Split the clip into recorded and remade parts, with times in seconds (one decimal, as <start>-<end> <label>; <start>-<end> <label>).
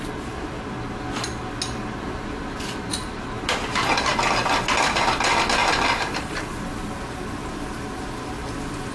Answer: 0.0-2.9 recorded; 2.9-4.2 remade; 4.2-5.6 recorded; 5.6-6.7 remade; 6.7-8.9 recorded